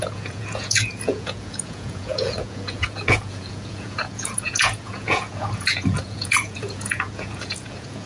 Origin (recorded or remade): remade